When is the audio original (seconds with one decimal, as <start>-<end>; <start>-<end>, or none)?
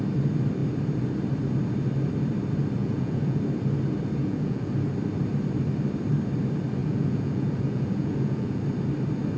0.0-2.8; 3.4-4.2; 4.7-6.8; 8.6-9.4